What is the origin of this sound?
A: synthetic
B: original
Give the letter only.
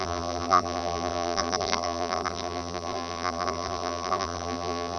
A